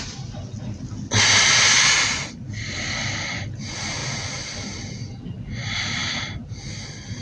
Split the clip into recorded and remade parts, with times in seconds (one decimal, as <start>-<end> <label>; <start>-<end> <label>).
0.0-4.0 recorded; 4.0-5.2 remade; 5.2-6.0 recorded; 6.0-6.6 remade; 6.6-7.2 recorded